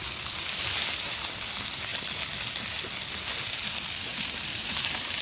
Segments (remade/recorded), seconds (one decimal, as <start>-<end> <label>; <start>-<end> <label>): 0.0-4.1 recorded; 4.1-5.2 remade